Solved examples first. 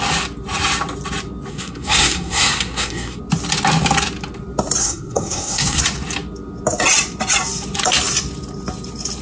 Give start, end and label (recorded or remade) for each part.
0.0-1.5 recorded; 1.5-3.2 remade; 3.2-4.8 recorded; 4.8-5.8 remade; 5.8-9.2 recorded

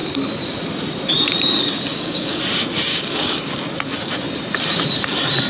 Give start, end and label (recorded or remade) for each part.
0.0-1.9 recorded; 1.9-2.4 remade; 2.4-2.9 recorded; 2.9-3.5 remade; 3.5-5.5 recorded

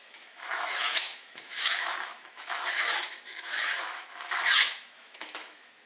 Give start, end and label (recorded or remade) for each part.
0.0-5.9 remade

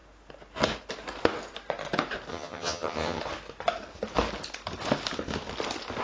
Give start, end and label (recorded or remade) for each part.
0.0-2.3 recorded; 2.3-3.2 remade; 3.2-6.0 recorded